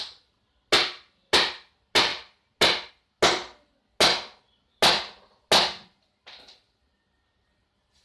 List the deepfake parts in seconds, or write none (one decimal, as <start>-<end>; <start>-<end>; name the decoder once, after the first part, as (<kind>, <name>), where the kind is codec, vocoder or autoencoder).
none